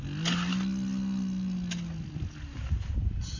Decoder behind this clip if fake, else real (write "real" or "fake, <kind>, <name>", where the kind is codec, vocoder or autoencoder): real